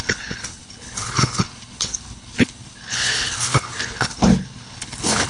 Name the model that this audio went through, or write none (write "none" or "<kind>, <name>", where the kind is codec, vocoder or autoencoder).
codec, HILCodec